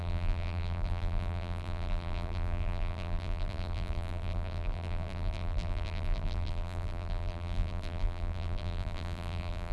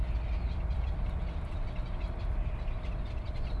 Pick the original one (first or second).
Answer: second